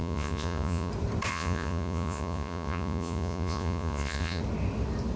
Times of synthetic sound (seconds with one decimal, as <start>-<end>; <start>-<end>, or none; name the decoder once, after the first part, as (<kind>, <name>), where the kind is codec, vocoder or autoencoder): 0.0-0.9 (vocoder, Vocos); 1.3-4.4